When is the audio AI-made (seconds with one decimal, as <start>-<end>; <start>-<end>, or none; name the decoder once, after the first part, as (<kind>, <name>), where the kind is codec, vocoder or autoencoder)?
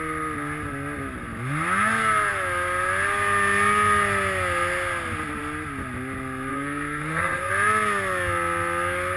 6.5-7.5 (codec, SNAC)